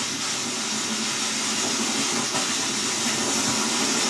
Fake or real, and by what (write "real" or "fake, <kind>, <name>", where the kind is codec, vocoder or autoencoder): real